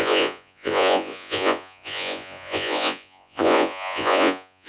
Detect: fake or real fake